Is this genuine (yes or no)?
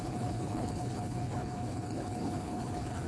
no